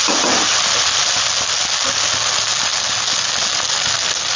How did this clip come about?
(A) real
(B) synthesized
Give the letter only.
A